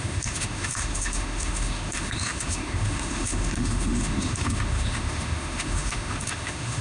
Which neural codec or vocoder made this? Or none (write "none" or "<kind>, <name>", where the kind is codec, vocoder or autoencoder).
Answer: autoencoder, DAC-VAE